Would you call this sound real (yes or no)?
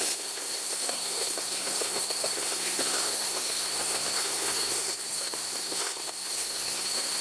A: no